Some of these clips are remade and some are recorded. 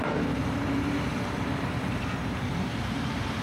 remade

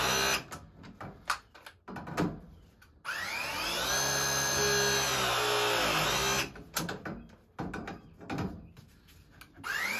recorded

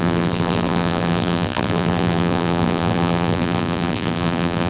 remade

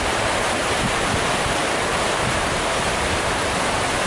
remade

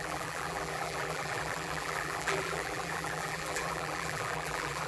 remade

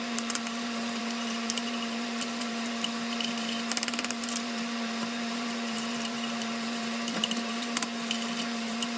remade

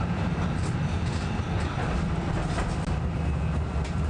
recorded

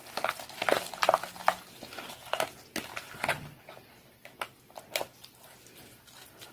recorded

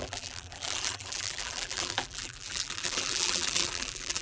remade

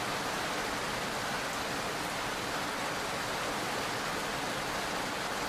recorded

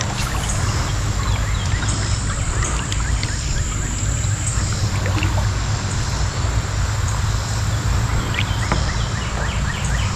recorded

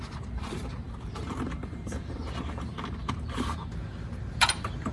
remade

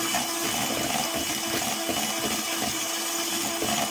recorded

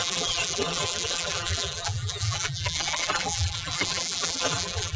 remade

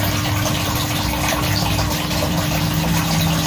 recorded